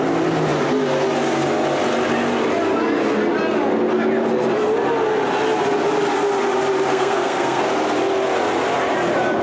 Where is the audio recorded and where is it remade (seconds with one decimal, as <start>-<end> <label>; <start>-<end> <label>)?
0.0-6.9 recorded; 6.9-7.6 remade; 7.6-9.4 recorded